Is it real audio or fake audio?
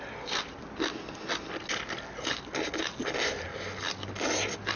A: real